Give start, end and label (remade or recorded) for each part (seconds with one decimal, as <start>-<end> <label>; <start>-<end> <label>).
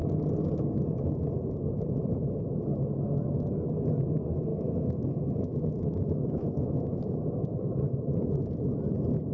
0.0-4.5 recorded; 4.5-7.0 remade; 7.0-7.5 recorded; 7.5-8.3 remade; 8.3-9.3 recorded